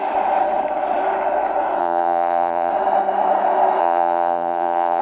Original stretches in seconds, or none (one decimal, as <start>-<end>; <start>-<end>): 0.0-1.8; 2.7-3.8